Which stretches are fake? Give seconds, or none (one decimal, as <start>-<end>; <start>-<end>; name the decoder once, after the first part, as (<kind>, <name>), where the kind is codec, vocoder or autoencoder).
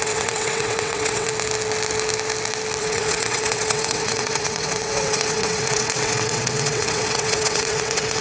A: 0.0-1.3 (vocoder, WaveNeXt); 2.8-8.2